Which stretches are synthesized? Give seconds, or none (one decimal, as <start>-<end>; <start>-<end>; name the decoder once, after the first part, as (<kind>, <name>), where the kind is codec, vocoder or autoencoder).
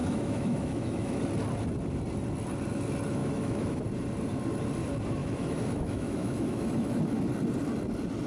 0.0-1.2 (autoencoder, DAC-VAE); 3.2-3.8; 5.2-7.0